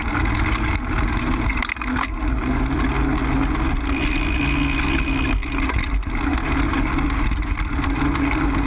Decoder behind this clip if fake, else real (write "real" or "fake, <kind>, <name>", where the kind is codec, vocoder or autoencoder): real